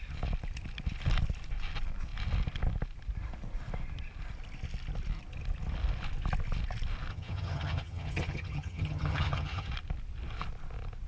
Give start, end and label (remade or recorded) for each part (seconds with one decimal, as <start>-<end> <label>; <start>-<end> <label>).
0.0-7.1 recorded; 7.1-9.7 remade; 9.7-11.1 recorded